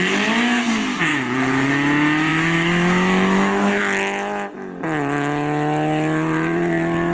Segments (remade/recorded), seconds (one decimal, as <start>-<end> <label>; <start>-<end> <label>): 0.0-1.1 recorded; 1.1-1.7 remade; 1.7-2.3 recorded; 2.3-3.8 remade; 3.8-7.1 recorded